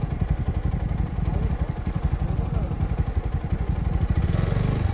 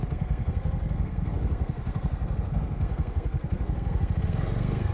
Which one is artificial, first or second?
second